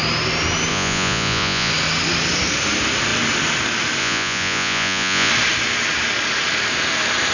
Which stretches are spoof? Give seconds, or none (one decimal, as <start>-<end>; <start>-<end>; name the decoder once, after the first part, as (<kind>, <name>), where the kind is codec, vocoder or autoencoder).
0.7-1.7 (vocoder, Vocos); 4.0-5.3